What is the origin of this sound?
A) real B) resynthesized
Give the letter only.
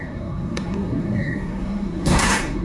B